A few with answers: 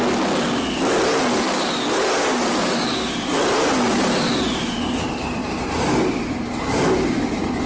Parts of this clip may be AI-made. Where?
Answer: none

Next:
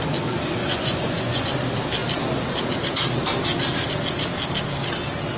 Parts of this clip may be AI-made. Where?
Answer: 0.6-1.5 (vocoder, Vocos)

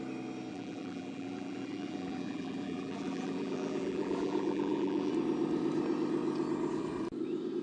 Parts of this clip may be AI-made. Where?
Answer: 0.5-5.1 (vocoder, BigVGAN v2)